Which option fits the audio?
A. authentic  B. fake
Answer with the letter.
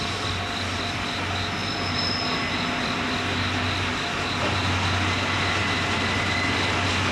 A